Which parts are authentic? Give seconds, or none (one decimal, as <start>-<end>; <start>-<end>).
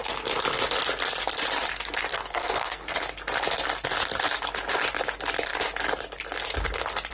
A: 0.0-2.1; 3.0-7.1